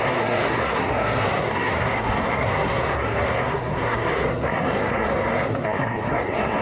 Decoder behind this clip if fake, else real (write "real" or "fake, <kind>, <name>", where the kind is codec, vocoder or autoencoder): fake, codec, SNAC